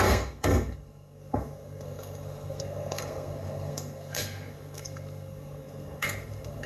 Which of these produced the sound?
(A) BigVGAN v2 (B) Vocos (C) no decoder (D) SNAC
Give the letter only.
D